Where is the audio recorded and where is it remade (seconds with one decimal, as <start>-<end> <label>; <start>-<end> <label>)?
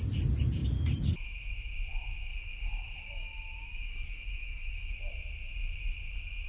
0.0-2.3 recorded; 2.3-4.9 remade; 4.9-6.5 recorded